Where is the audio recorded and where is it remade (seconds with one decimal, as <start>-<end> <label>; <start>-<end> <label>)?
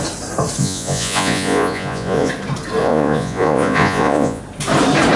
0.0-0.6 recorded; 0.6-2.3 remade; 2.3-2.8 recorded; 2.8-4.4 remade; 4.4-5.2 recorded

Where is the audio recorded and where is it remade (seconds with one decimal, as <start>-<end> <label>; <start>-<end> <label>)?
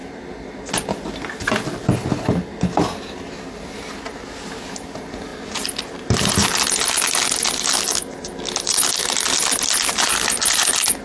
0.0-11.0 recorded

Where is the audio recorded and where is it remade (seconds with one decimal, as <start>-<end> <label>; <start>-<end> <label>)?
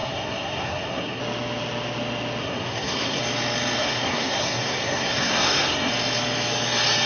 0.0-1.2 remade; 1.2-2.4 recorded; 2.4-3.2 remade; 3.2-3.8 recorded; 3.8-5.9 remade; 5.9-7.1 recorded